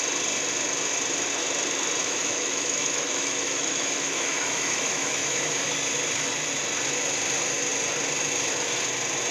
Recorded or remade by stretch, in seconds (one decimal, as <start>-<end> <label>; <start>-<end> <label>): 0.0-2.0 recorded; 2.0-5.7 remade; 5.7-9.3 recorded